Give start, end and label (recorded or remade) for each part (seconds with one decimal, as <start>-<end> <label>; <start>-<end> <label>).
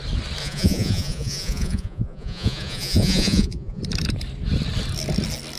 0.0-0.4 recorded; 0.4-3.8 remade; 3.8-5.6 recorded